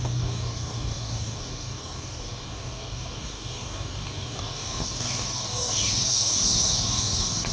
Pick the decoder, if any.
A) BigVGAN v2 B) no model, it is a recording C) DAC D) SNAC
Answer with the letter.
C